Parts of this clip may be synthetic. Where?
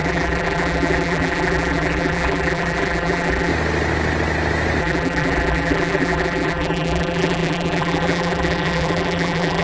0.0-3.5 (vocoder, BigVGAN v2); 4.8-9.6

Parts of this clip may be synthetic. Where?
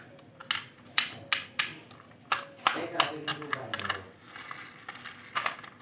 none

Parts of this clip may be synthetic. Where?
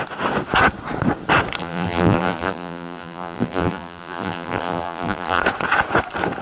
1.6-5.4 (vocoder, BigVGAN v2)